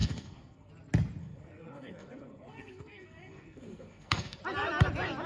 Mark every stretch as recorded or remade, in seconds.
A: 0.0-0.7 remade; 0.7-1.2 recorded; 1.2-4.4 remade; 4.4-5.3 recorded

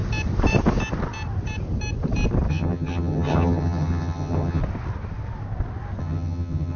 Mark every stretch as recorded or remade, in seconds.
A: 0.0-2.5 recorded; 2.5-4.6 remade; 4.6-6.0 recorded; 6.0-6.8 remade